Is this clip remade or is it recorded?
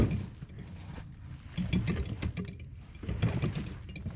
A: recorded